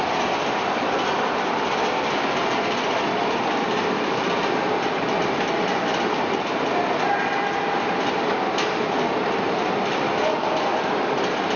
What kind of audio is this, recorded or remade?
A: recorded